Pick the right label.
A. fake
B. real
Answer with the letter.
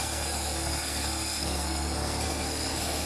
A